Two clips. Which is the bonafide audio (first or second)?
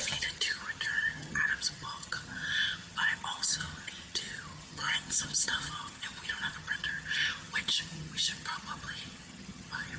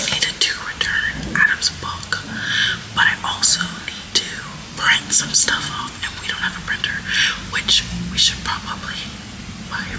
second